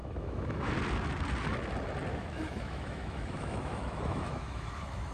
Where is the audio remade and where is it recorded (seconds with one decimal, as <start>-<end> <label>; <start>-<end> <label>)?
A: 0.0-0.7 remade; 0.7-2.1 recorded; 2.1-5.1 remade